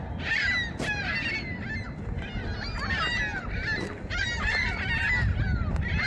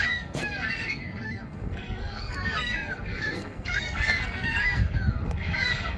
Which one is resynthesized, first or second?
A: second